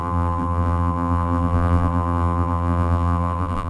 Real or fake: fake